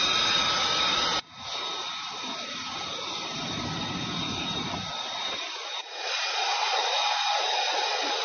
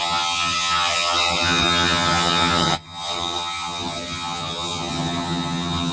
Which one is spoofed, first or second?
second